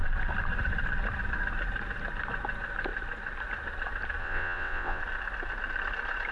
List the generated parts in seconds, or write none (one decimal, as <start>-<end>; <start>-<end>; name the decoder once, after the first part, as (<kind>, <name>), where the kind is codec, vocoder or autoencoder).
4.2-5.0 (vocoder, WaveNeXt)